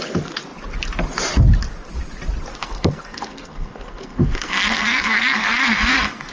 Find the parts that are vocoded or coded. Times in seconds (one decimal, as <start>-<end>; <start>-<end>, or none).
2.5-6.3